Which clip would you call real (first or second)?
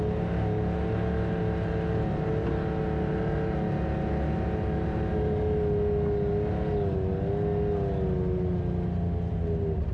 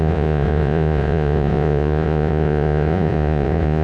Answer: first